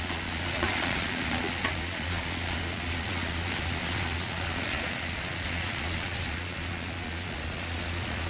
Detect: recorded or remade remade